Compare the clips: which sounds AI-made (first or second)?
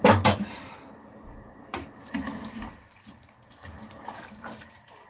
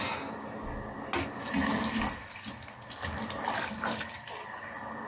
first